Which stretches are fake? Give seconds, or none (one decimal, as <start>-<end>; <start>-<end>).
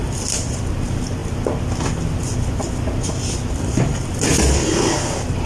none